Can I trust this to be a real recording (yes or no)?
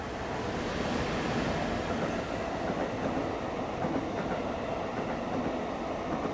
yes